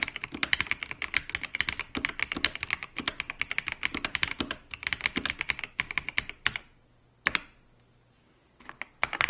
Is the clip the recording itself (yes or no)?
yes